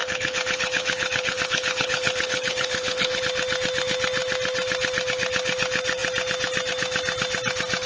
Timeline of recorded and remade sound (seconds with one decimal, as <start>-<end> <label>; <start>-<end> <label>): 0.0-3.2 remade; 3.2-7.9 recorded